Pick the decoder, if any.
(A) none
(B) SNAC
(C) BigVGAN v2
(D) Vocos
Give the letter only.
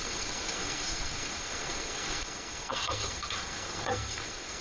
B